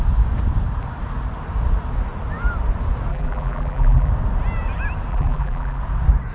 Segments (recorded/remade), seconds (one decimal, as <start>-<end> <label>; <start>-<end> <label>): 0.0-3.1 recorded; 3.1-4.1 remade; 4.1-5.1 recorded; 5.1-5.8 remade; 5.8-6.3 recorded